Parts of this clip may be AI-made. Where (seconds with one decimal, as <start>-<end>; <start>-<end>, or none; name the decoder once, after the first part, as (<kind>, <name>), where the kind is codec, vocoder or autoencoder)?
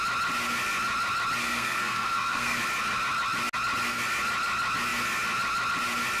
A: 1.4-2.6 (codec, SNAC)